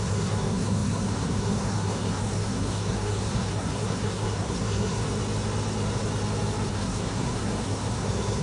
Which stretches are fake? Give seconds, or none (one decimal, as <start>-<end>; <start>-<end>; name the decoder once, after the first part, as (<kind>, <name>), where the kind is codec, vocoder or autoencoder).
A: 0.0-5.0 (codec, SNAC); 6.7-8.4